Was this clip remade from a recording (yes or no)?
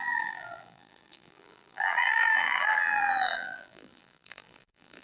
yes